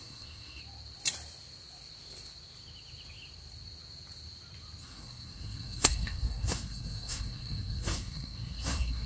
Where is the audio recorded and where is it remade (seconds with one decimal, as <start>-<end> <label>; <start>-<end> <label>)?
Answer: 0.0-0.6 remade; 0.6-4.8 recorded; 4.8-9.1 remade

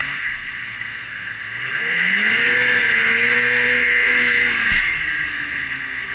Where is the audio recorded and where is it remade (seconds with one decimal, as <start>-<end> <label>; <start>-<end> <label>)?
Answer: 0.0-4.4 remade; 4.4-5.3 recorded; 5.3-6.1 remade

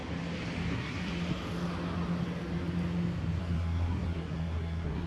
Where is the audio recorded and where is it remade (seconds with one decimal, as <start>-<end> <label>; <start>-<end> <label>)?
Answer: 0.0-0.7 recorded; 0.7-1.1 remade; 1.1-3.4 recorded; 3.4-5.1 remade